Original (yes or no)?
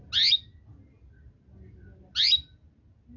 yes